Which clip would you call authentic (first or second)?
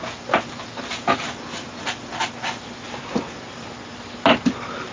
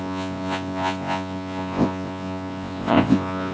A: first